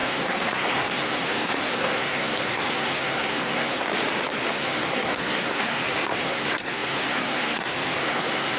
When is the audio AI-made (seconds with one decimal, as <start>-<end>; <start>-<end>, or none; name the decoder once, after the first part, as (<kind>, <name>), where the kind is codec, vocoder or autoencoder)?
0.0-3.9 (codec, SNAC); 4.5-8.6